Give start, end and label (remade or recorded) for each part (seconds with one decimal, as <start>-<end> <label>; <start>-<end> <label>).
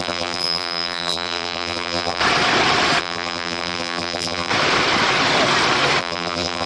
0.0-2.2 remade; 2.2-3.0 recorded; 3.0-4.5 remade; 4.5-6.0 recorded; 6.0-6.7 remade